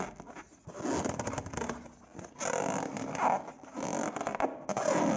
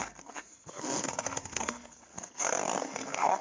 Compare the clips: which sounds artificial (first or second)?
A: second